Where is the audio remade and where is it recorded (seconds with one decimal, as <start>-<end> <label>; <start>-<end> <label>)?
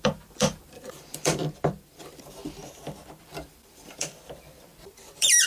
0.0-2.6 remade; 2.6-3.2 recorded; 3.2-5.5 remade